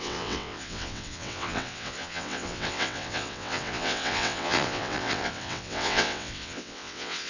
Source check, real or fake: fake